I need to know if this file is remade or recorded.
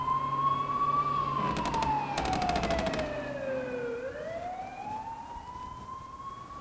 recorded